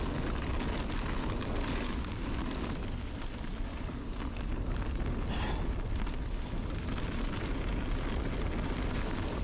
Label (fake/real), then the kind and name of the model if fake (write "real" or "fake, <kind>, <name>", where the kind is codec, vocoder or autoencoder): real